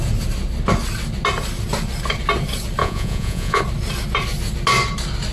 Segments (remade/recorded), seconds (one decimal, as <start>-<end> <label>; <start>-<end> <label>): 0.0-2.8 recorded; 2.8-3.6 remade; 3.6-5.3 recorded